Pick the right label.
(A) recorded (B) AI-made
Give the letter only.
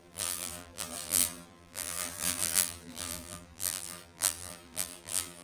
B